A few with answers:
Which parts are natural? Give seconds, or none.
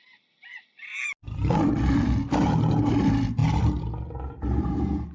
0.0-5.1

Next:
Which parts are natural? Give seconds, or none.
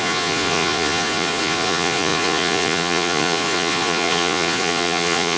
none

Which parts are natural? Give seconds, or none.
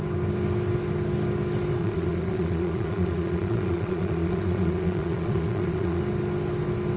0.0-1.8; 6.0-7.0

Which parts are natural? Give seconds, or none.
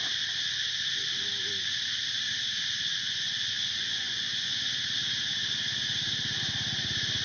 0.0-2.9; 4.7-7.2